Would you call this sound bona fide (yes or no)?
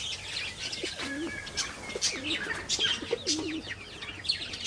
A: yes